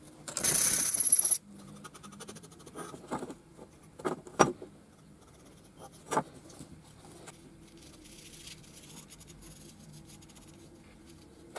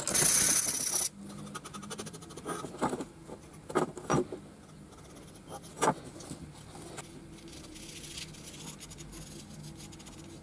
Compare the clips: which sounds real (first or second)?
second